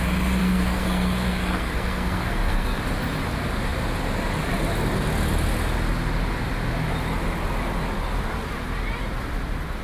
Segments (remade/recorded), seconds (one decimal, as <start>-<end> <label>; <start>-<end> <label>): 0.0-0.4 recorded; 0.4-2.8 remade; 2.8-9.8 recorded